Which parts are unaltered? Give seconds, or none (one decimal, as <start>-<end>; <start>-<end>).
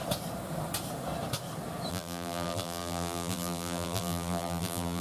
0.0-1.9